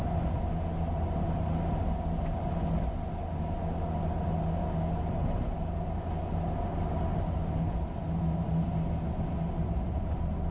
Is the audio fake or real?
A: real